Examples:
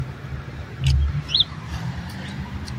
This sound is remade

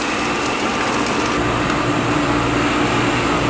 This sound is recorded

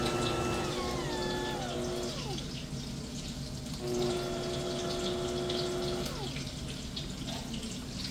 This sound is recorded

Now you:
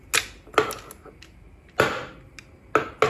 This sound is recorded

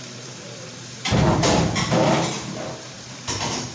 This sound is remade